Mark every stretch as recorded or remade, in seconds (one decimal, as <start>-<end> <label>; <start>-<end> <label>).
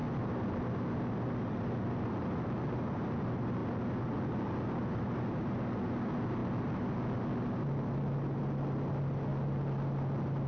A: 0.0-10.5 recorded